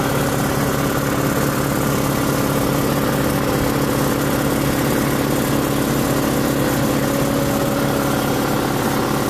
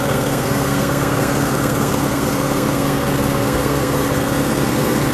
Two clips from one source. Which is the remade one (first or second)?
second